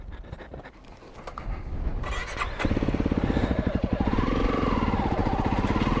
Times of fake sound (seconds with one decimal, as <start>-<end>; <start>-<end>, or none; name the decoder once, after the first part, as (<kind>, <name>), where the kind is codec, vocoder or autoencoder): none